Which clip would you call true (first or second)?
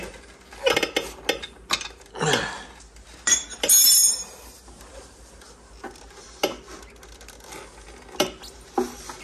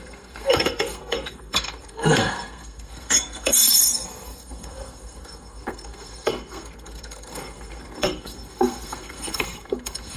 first